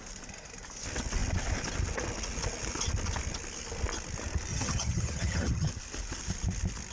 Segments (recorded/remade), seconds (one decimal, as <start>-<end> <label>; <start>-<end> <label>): 0.0-4.5 recorded; 4.5-5.7 remade; 5.7-6.9 recorded